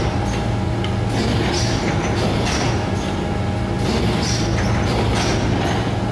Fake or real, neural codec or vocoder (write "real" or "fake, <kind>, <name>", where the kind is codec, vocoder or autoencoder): real